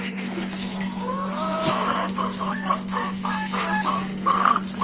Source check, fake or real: fake